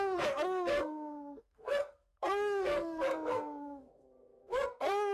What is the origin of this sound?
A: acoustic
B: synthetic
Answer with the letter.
B